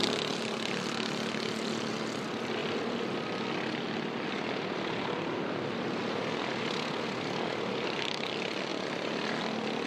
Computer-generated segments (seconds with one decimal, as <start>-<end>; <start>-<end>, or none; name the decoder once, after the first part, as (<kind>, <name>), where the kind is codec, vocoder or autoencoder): 8.7-9.4 (vocoder, BigVGAN v2)